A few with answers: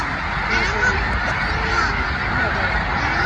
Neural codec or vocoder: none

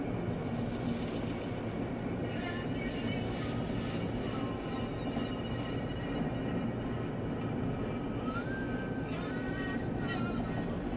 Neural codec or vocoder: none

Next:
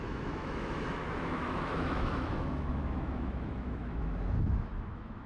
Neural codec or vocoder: autoencoder, DAC-VAE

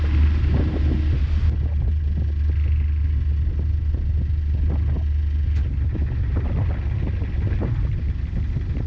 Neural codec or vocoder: none